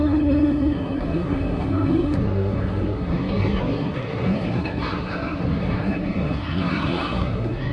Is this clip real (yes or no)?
no